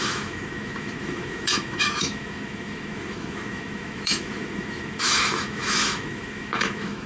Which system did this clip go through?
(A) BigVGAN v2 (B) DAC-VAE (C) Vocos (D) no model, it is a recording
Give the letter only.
B